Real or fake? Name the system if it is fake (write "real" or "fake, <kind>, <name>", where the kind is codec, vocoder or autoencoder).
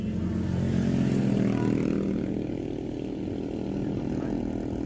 real